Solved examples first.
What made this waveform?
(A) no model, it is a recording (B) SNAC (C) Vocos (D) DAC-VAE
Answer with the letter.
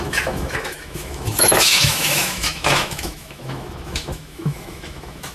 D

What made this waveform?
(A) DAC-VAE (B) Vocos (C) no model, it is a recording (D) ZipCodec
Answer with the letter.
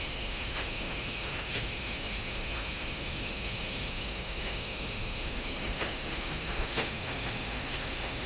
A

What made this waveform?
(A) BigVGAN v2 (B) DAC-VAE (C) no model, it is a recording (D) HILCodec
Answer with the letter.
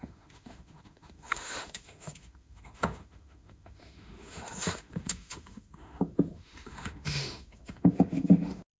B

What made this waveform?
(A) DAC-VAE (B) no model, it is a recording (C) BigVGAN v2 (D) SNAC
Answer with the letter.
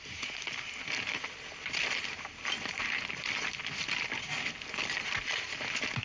B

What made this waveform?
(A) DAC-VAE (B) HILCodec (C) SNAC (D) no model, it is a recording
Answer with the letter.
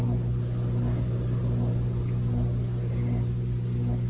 D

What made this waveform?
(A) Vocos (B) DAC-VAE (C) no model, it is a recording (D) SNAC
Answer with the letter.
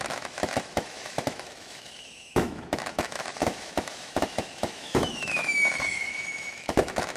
B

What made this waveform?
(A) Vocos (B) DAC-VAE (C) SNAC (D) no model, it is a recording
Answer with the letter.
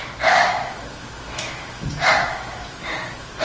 B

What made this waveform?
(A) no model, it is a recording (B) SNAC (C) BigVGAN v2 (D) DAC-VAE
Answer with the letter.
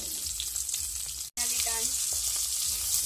A